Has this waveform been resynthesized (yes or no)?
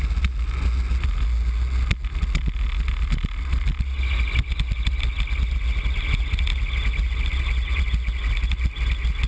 no